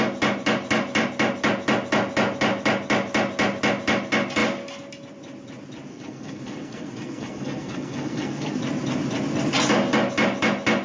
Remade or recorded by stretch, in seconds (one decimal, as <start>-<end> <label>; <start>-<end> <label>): 0.0-5.9 recorded; 5.9-8.6 remade; 8.6-10.8 recorded